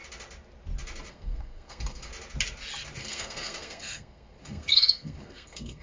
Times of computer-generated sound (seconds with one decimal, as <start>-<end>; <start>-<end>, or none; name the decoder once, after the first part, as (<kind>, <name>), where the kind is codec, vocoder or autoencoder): 1.1-2.1 (codec, SNAC); 3.0-5.8